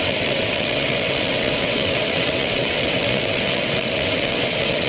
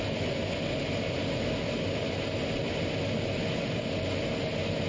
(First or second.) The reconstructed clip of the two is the first